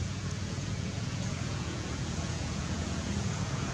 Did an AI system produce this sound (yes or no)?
yes